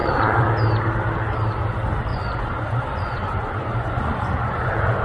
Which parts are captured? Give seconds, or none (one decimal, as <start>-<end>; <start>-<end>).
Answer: 0.5-2.1